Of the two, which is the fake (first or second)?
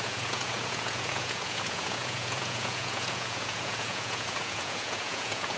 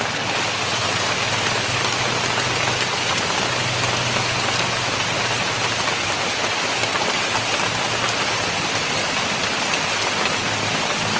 first